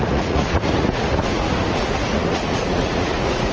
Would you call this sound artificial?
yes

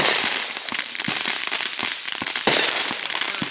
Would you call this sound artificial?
yes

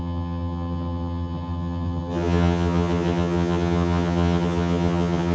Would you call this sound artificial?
yes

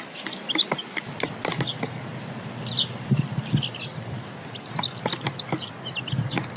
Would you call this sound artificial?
no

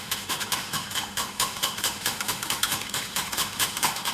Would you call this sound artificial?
yes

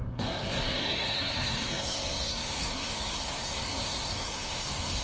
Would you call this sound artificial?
yes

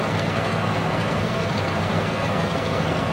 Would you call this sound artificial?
yes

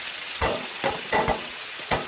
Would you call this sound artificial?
yes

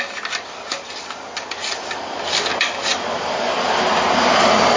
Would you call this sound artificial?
no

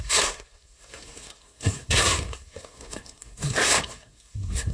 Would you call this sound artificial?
yes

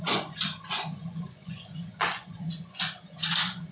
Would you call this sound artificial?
yes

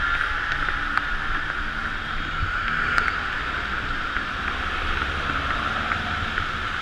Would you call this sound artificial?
no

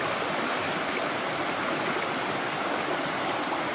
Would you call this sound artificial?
no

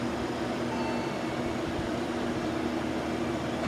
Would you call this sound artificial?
no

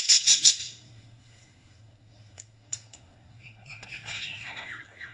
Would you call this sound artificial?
yes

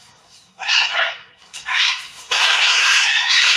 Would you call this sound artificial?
yes